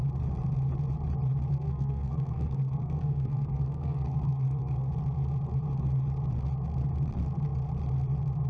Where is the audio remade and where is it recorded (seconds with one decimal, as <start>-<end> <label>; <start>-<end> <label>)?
0.0-1.5 recorded; 1.5-4.9 remade; 4.9-8.5 recorded